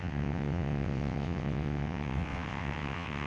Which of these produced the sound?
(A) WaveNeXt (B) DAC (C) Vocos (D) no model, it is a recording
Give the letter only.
A